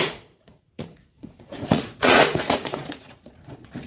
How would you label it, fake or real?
fake